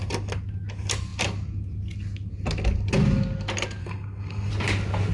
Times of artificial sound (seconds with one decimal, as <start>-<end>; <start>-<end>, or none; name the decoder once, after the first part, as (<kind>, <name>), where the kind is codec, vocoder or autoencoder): 3.8-4.5 (codec, SNAC)